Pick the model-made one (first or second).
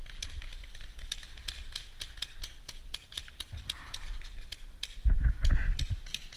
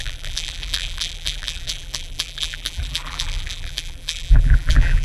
second